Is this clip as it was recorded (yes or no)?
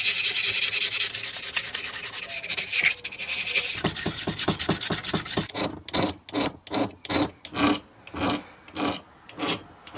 yes